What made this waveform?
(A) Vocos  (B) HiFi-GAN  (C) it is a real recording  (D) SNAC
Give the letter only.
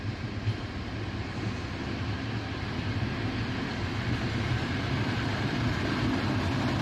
C